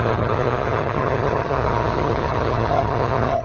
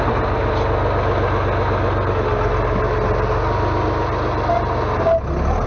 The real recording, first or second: second